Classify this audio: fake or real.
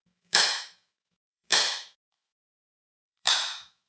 fake